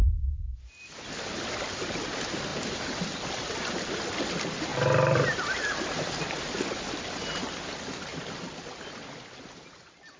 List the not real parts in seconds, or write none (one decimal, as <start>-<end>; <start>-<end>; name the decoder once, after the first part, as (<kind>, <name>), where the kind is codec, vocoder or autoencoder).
0.0-0.6 (vocoder, BigVGAN v2); 2.5-3.0; 4.7-6.4; 8.1-8.6